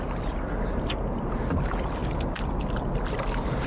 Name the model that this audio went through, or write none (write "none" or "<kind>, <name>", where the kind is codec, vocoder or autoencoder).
none